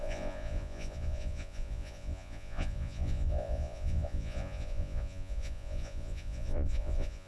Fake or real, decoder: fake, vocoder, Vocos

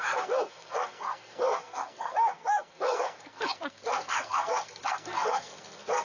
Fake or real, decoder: fake, codec, SNAC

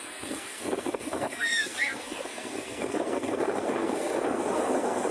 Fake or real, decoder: fake, codec, SNAC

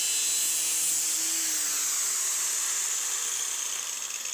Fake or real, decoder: real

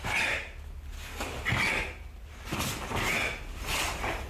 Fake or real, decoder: real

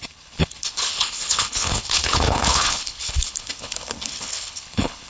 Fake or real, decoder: fake, codec, HILCodec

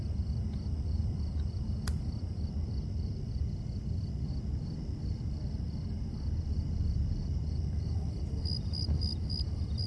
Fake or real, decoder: real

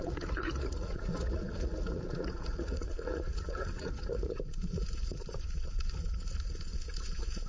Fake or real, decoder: fake, vocoder, Vocos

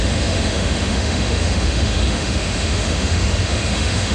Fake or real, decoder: fake, autoencoder, DAC-VAE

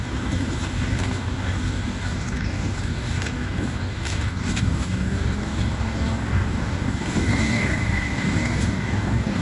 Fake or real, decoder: fake, codec, DAC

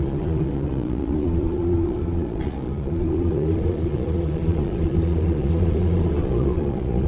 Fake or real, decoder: fake, vocoder, Vocos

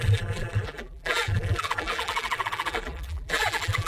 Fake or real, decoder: fake, vocoder, BigVGAN v2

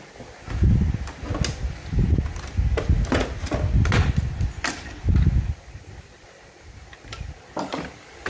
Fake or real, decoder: real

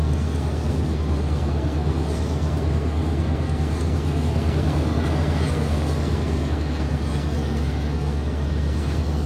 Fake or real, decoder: fake, codec, SNAC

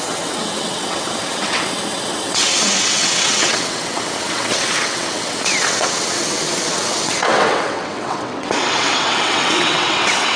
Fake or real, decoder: fake, vocoder, WaveNeXt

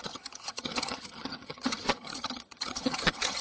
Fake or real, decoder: fake, vocoder, HiFi-GAN